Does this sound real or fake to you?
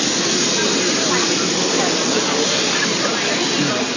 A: real